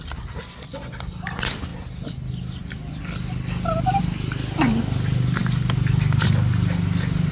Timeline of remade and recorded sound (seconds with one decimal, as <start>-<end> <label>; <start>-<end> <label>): 0.0-7.3 recorded